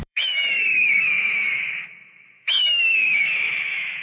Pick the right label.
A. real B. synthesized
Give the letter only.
B